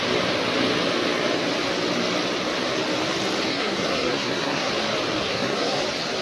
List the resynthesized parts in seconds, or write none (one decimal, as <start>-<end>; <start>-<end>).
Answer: 3.5-4.7; 5.2-5.8